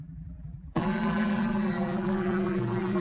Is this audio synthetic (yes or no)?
yes